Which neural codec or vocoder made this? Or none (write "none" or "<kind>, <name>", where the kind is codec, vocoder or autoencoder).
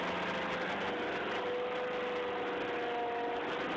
none